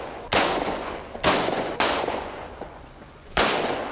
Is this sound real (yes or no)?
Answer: no